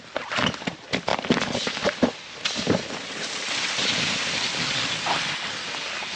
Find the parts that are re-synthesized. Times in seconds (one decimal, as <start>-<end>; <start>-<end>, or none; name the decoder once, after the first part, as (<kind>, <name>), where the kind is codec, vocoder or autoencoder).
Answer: none